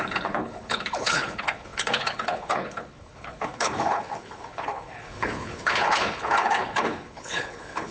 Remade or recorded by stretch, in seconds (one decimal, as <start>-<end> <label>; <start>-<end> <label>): 0.0-7.9 remade